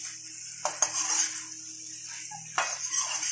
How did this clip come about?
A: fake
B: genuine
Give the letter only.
B